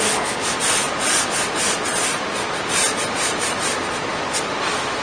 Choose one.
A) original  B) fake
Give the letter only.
A